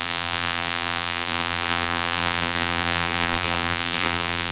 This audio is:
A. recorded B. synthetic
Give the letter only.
B